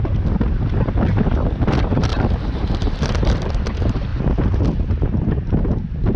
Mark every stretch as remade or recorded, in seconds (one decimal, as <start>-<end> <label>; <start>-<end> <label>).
0.0-2.1 recorded; 2.1-3.5 remade; 3.5-4.1 recorded; 4.1-4.6 remade; 4.6-6.2 recorded